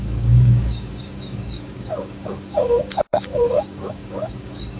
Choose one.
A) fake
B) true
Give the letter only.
A